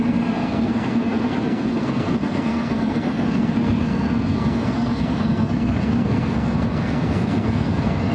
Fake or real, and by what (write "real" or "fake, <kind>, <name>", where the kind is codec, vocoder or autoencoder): fake, codec, SNAC